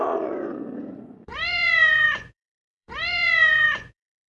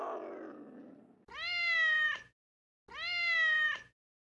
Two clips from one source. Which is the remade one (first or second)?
first